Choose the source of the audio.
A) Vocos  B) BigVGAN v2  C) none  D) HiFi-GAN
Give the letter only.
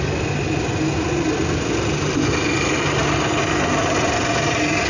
C